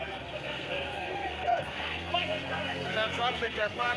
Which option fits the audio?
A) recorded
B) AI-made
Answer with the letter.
B